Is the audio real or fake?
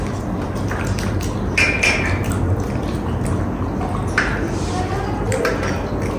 real